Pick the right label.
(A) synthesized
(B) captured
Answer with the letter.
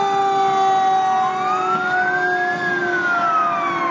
B